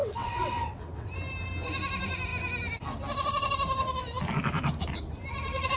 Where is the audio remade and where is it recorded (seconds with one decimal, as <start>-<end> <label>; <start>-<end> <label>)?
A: 0.0-1.1 remade; 1.1-5.8 recorded